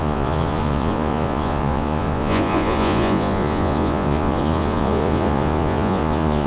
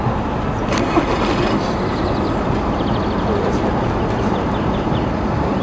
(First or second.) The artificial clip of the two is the first